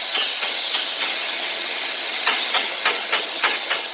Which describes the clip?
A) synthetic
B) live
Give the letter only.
A